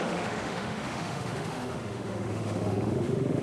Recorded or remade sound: remade